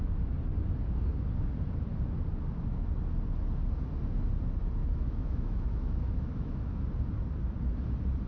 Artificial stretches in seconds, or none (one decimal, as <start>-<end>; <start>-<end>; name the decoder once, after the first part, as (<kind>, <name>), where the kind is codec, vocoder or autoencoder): 4.8-6.8 (autoencoder, DAC-VAE)